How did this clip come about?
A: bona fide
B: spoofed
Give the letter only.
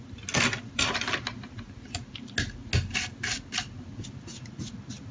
A